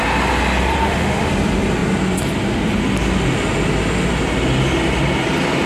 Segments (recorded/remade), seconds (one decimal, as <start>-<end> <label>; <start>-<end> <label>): 0.0-0.8 recorded; 0.8-1.3 remade; 1.3-5.7 recorded